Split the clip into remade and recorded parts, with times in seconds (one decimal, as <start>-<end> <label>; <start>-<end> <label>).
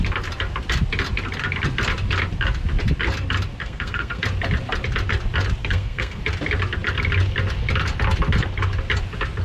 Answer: 0.0-3.6 recorded; 3.6-4.2 remade; 4.2-5.6 recorded; 5.6-6.2 remade; 6.2-9.4 recorded